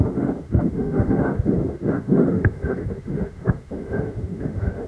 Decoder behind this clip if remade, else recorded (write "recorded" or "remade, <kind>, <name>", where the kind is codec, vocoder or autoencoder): remade, autoencoder, DAC-VAE